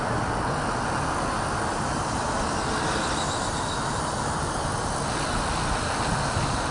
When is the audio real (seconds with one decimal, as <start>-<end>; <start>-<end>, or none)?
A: 0.0-6.7